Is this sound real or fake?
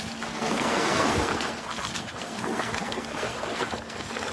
fake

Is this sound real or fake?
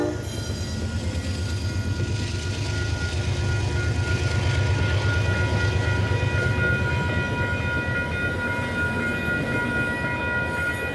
real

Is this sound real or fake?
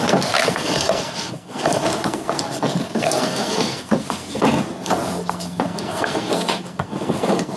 fake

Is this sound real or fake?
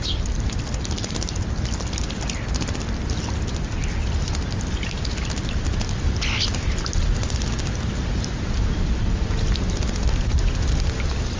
real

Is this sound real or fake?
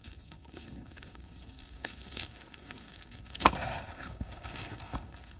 fake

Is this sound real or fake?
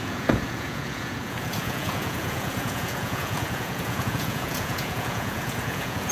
fake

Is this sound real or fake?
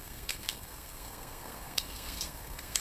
fake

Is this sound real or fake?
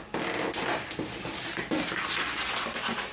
real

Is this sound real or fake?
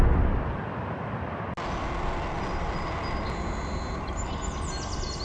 real